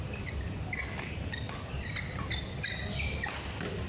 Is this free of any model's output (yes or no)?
yes